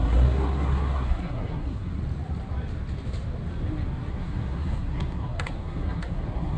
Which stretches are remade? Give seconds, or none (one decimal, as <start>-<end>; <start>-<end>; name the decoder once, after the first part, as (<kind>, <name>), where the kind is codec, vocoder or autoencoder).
0.0-2.0 (codec, SNAC); 4.1-6.6